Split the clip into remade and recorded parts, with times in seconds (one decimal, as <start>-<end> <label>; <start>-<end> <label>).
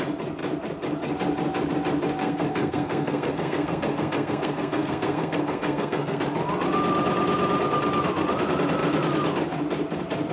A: 0.0-2.2 recorded; 2.2-6.2 remade; 6.2-10.3 recorded